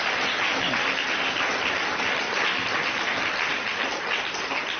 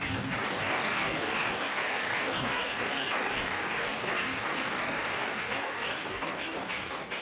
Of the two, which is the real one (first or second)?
first